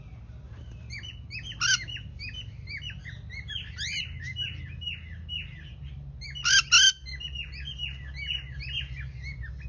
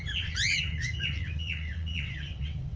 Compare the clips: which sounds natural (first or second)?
first